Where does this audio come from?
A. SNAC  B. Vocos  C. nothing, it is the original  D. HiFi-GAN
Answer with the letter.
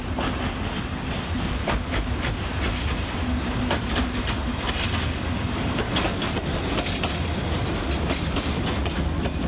C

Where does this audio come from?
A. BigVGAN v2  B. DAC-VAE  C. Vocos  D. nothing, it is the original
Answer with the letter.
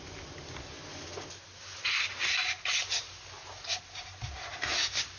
D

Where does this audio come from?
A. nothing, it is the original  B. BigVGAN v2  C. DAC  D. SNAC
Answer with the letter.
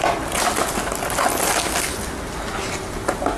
A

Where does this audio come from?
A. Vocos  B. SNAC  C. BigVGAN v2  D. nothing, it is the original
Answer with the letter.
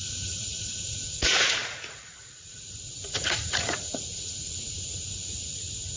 A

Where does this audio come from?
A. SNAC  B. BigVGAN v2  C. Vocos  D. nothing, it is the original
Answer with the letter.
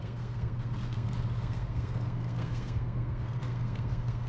A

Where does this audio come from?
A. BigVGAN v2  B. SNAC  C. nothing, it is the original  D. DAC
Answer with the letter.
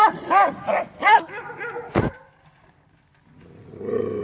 C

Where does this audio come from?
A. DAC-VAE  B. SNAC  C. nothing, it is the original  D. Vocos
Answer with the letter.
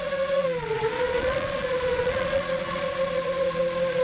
D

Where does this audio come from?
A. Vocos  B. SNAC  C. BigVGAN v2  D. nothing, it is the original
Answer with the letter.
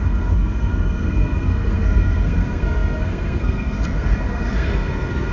B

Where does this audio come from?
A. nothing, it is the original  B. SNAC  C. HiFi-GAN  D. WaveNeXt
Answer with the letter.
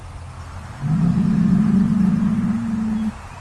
A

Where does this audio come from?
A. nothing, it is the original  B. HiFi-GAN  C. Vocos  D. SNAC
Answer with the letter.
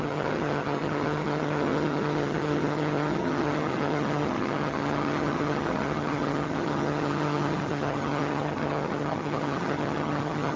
B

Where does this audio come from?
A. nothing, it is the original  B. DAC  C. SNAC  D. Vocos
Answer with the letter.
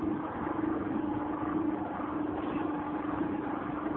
A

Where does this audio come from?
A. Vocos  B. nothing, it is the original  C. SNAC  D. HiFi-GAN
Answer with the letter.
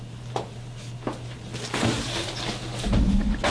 B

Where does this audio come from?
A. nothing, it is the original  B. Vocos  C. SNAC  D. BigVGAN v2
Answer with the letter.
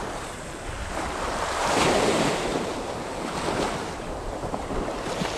D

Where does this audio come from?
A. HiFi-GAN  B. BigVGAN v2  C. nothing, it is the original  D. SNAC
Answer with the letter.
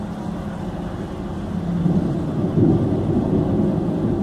C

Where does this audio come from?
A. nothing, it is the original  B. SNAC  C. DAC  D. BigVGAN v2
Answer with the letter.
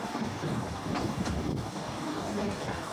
C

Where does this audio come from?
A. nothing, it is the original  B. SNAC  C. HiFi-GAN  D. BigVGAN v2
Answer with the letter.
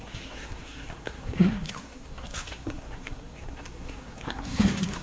B